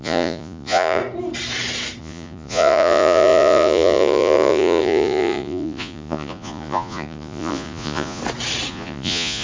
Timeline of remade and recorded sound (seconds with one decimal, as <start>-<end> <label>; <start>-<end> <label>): 0.0-1.0 remade; 1.0-2.0 recorded; 2.0-8.2 remade; 8.2-8.7 recorded; 8.7-9.4 remade